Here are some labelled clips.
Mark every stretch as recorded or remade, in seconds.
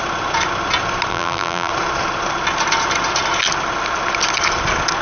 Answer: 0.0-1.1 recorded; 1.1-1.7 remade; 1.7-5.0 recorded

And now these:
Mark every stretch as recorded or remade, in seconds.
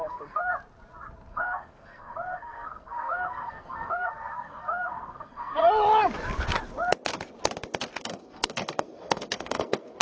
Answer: 0.0-0.5 remade; 0.5-1.3 recorded; 1.3-5.6 remade; 5.6-8.0 recorded; 8.0-10.0 remade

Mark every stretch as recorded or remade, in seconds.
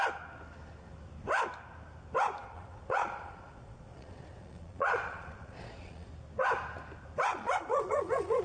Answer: 0.0-2.4 recorded; 2.4-6.1 remade; 6.1-7.3 recorded; 7.3-8.4 remade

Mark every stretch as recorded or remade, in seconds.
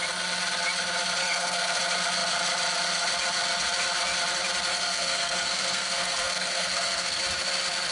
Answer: 0.0-1.2 recorded; 1.2-1.8 remade; 1.8-4.7 recorded; 4.7-7.2 remade; 7.2-7.9 recorded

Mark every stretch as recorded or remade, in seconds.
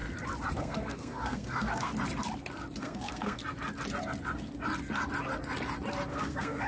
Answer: 0.0-0.6 recorded; 0.6-1.9 remade; 1.9-2.8 recorded; 2.8-3.4 remade; 3.4-6.1 recorded; 6.1-6.7 remade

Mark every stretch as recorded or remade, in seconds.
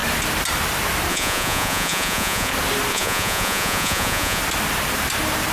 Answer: 0.0-1.1 recorded; 1.1-2.5 remade; 2.5-2.9 recorded; 2.9-4.4 remade; 4.4-5.5 recorded